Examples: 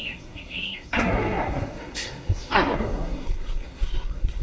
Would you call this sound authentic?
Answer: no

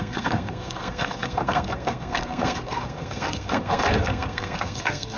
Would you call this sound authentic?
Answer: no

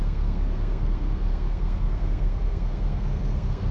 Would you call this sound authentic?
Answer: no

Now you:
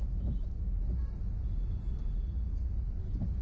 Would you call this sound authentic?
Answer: yes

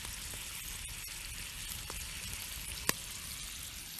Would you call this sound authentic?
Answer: yes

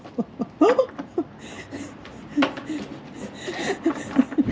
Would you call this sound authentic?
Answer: yes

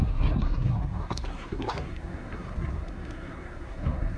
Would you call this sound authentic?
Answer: no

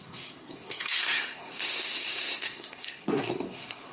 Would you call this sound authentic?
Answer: no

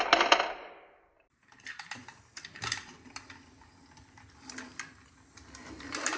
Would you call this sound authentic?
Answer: yes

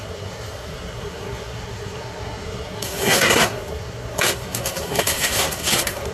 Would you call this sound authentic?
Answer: no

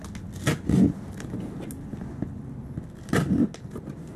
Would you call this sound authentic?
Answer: yes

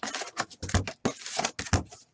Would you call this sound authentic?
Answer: yes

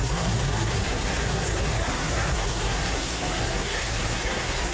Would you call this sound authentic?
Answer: no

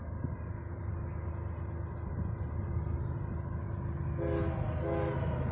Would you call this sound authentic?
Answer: yes